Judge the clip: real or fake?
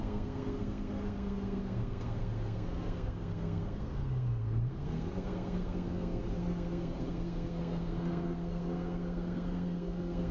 fake